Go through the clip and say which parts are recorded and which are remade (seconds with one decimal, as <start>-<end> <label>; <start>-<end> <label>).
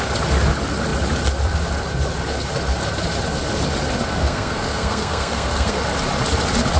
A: 0.0-4.2 recorded; 4.2-5.8 remade; 5.8-6.8 recorded